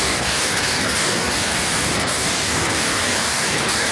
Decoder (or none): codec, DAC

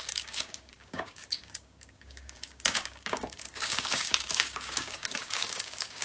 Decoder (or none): codec, DAC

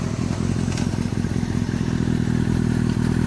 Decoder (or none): none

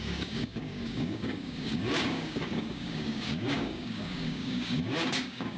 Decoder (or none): codec, DAC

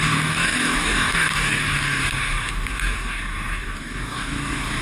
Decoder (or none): codec, DAC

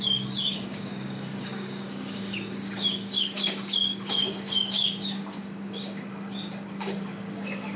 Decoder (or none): codec, DAC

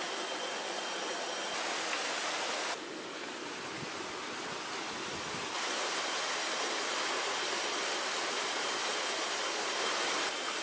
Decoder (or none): none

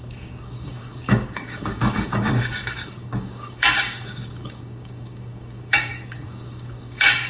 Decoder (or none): codec, DAC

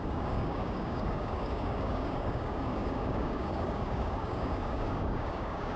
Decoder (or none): codec, DAC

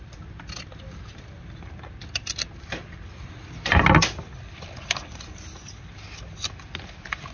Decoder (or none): none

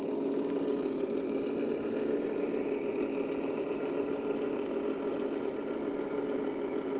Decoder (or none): none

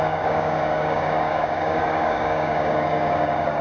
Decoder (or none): codec, DAC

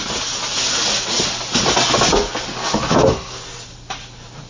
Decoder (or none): none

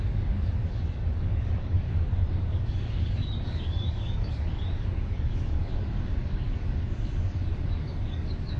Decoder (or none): codec, DAC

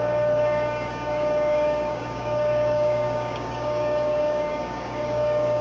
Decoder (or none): codec, DAC